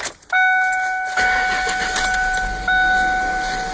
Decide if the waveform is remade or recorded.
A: recorded